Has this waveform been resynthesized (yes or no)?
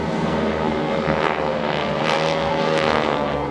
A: yes